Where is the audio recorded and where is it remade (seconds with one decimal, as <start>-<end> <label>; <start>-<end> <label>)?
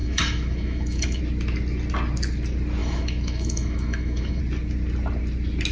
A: 0.0-1.2 remade; 1.2-2.8 recorded; 2.8-4.4 remade; 4.4-5.7 recorded